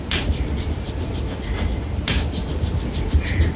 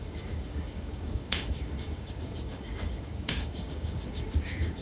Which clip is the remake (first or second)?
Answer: second